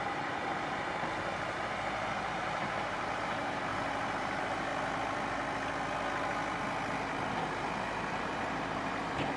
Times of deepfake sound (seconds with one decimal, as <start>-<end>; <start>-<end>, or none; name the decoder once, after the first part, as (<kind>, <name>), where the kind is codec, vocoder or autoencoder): 0.0-3.7 (vocoder, BigVGAN v2); 4.2-4.7; 8.2-9.4